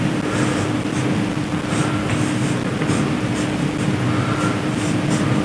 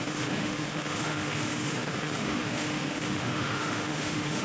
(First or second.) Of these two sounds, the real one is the first